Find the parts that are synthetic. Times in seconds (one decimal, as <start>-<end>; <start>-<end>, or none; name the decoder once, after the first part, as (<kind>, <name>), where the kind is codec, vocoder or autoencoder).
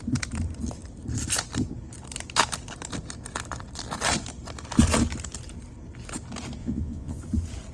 6.6-7.2 (vocoder, Vocos)